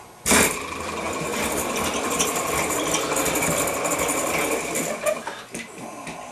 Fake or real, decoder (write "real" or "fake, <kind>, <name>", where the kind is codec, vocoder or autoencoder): real